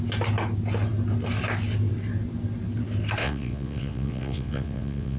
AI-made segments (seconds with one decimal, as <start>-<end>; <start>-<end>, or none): 3.2-5.2